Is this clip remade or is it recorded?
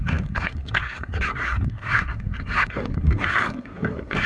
remade